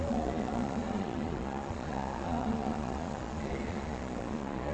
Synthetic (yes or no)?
yes